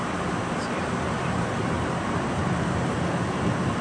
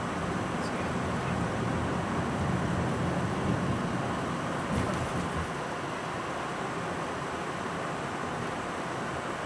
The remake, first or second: first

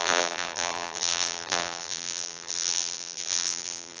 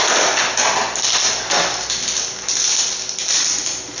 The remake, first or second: first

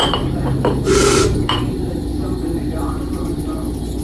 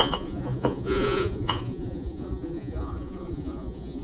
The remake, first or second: second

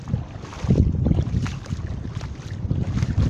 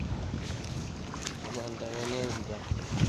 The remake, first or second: second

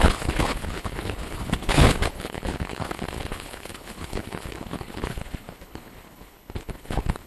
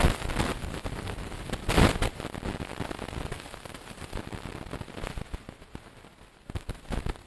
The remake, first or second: first